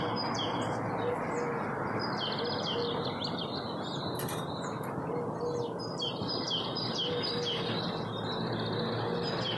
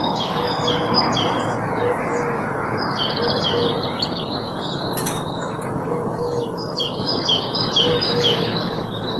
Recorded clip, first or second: first